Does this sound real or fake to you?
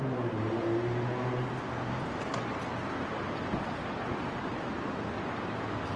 real